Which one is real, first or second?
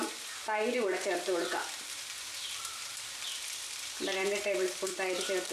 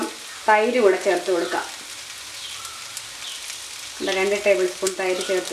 second